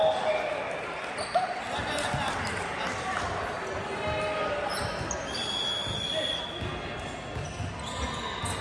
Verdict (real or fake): real